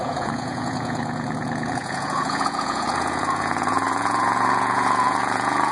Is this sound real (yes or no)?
no